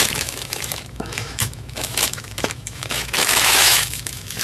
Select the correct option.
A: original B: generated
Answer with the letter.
B